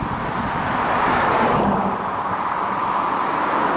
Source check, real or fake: real